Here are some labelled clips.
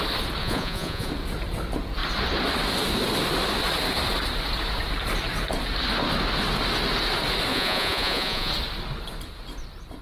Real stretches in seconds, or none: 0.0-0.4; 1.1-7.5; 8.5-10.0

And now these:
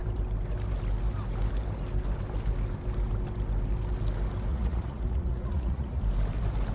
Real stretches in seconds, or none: 0.0-4.5; 6.0-6.7